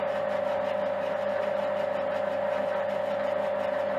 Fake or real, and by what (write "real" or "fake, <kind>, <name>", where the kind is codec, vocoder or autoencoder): real